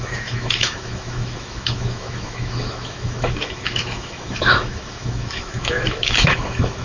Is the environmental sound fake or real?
fake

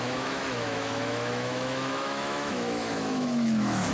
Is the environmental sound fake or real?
fake